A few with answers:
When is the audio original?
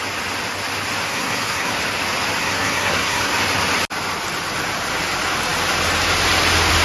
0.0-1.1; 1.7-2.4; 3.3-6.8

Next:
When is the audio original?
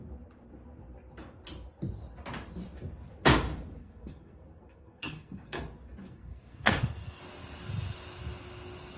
0.0-3.8; 5.6-6.0; 7.2-9.0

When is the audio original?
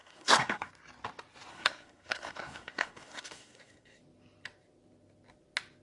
0.7-1.5; 4.0-5.8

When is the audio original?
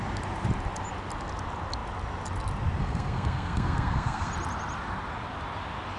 0.0-2.8; 4.3-6.0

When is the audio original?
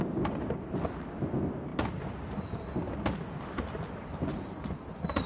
0.0-5.3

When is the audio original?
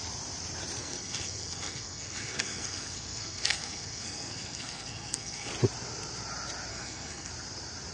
0.0-0.8; 5.5-6.7; 7.3-7.9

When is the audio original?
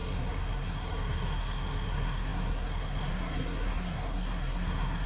none